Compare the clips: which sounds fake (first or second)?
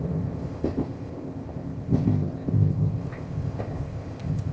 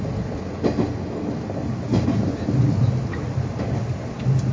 first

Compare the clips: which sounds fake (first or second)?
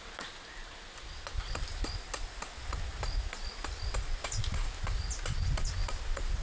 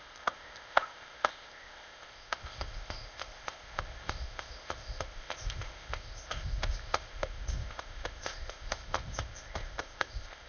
second